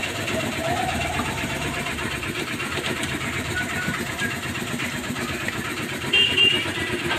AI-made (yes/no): yes